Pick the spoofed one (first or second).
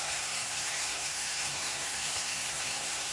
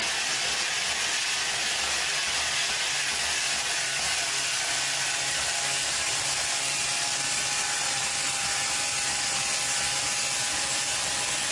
first